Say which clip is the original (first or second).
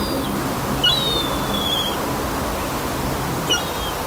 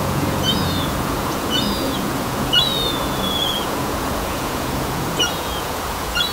first